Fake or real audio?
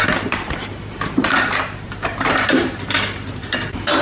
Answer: fake